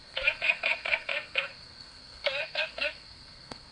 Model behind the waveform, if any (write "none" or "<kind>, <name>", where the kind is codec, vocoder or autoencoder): codec, SNAC